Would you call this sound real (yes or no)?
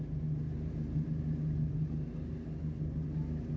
yes